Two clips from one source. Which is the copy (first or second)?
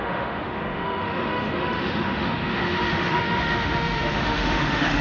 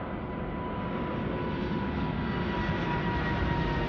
first